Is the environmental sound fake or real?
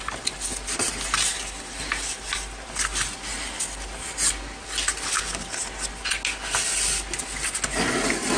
real